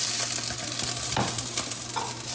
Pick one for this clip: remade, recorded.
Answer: recorded